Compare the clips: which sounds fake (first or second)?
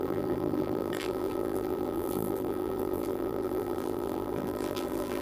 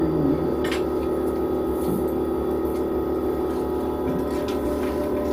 first